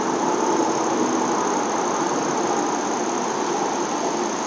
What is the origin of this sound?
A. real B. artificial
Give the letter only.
A